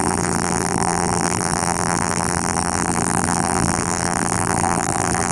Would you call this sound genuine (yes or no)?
no